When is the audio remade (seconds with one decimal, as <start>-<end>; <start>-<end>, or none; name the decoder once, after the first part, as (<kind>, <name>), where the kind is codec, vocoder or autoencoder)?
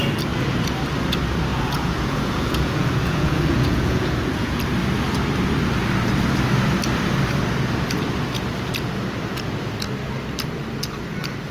1.5-4.6 (vocoder, Vocos)